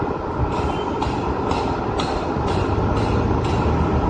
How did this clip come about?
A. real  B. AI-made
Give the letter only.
A